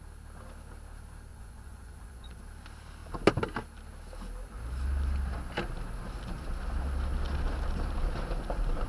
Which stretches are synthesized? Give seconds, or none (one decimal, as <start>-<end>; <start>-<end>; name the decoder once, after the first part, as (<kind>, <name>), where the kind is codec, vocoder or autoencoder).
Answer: 1.3-2.4 (vocoder, Vocos)